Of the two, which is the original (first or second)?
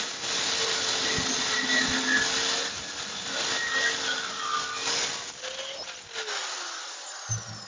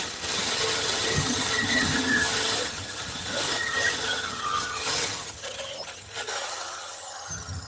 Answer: first